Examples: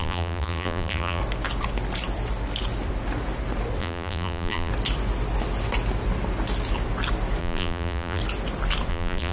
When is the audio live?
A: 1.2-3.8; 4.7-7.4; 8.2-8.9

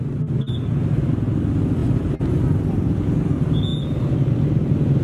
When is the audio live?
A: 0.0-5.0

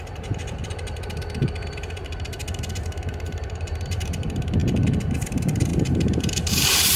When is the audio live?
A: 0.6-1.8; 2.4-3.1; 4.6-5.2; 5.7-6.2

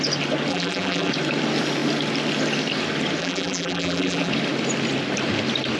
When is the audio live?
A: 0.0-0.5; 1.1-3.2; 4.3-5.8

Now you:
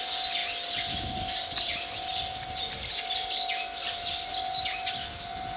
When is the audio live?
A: 0.0-5.6

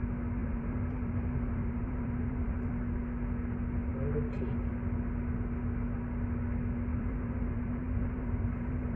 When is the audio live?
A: 0.0-0.4; 2.7-6.9

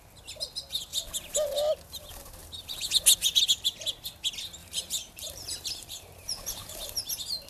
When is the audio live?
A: 0.0-2.4; 2.9-4.6; 7.0-7.5